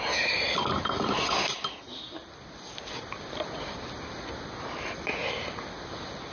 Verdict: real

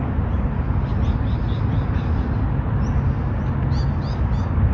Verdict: real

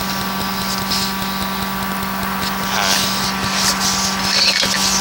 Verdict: real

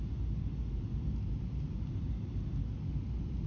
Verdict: real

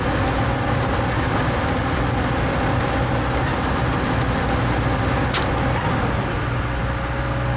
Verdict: real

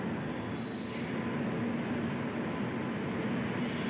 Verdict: real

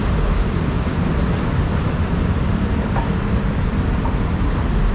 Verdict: fake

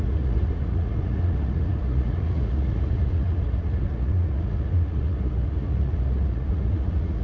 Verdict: fake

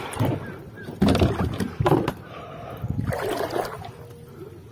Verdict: real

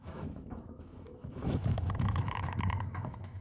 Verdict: fake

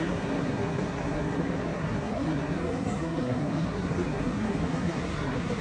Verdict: fake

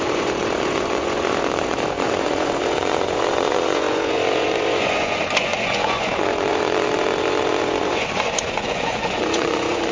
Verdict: fake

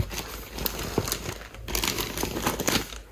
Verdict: real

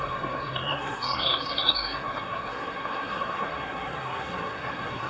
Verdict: fake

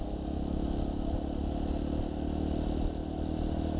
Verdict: real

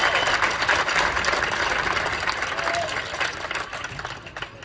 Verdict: real